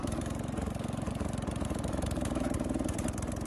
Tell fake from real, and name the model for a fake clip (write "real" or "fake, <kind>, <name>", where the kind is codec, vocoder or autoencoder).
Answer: fake, vocoder, BigVGAN v2